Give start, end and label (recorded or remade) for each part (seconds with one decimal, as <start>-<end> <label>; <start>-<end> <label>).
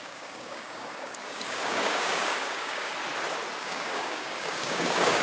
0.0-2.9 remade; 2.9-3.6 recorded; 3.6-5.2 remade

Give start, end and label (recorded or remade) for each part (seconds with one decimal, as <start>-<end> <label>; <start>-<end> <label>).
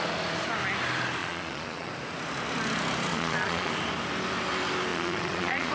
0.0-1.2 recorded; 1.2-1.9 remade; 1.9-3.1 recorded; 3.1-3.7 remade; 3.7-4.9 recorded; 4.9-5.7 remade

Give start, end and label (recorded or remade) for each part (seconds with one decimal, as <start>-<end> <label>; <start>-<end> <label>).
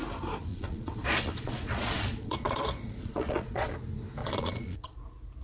0.0-0.5 recorded; 0.5-3.7 remade; 3.7-4.2 recorded; 4.2-5.0 remade; 5.0-5.4 recorded